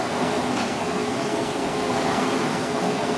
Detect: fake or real fake